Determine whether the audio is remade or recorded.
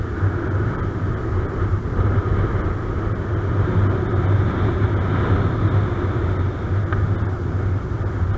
recorded